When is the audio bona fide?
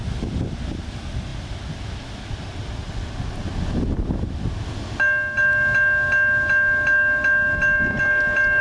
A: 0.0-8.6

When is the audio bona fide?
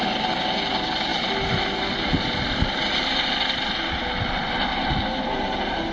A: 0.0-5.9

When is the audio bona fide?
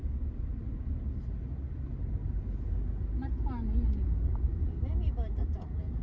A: 0.0-6.0